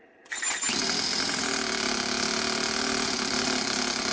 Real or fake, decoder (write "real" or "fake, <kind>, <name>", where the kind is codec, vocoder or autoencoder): real